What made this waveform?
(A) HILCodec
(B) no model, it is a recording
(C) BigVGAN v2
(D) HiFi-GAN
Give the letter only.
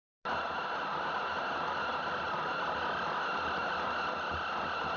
B